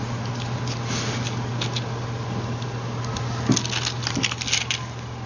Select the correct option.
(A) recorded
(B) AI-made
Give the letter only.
A